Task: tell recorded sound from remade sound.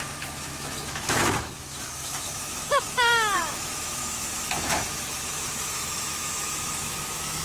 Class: remade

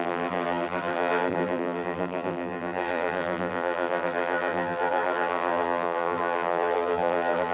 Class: remade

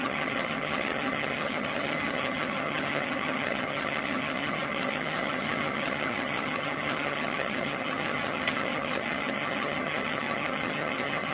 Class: remade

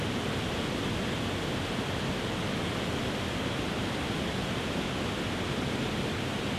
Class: recorded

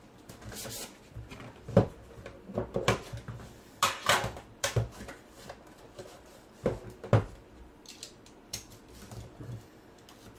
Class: remade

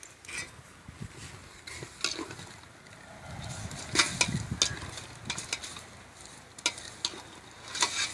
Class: recorded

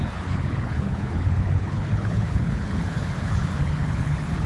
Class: remade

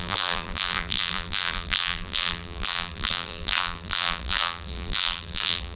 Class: remade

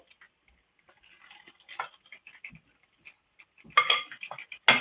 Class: recorded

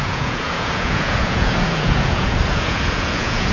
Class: remade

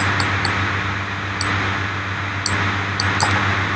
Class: recorded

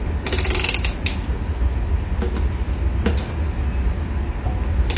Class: recorded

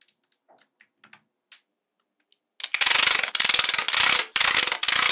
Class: recorded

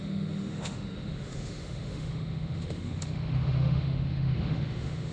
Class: remade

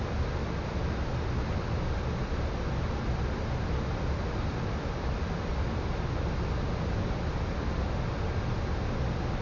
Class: recorded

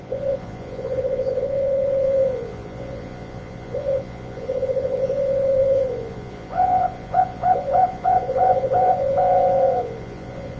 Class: remade